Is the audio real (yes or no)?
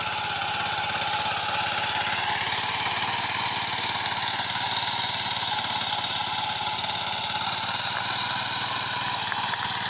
yes